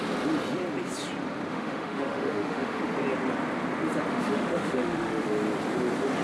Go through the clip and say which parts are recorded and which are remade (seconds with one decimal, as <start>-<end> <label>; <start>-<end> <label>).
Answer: 0.0-1.5 recorded; 1.5-2.8 remade; 2.8-4.1 recorded; 4.1-5.3 remade; 5.3-6.2 recorded